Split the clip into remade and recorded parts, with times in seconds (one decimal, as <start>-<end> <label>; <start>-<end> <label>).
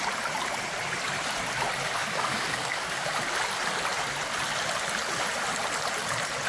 0.0-2.0 recorded; 2.0-3.1 remade; 3.1-6.5 recorded